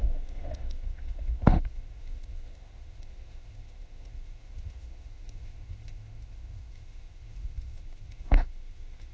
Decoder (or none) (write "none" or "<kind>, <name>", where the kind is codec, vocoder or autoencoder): autoencoder, DAC-VAE